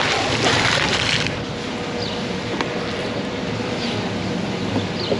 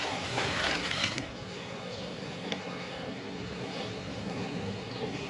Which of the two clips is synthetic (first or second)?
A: second